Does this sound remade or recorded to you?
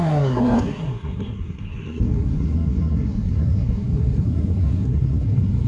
remade